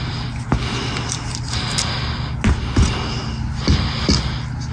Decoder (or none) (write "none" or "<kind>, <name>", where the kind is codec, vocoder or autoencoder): none